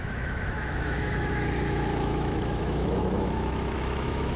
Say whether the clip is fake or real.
fake